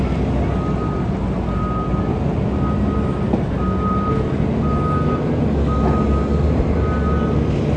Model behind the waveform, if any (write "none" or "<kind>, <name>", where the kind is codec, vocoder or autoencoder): none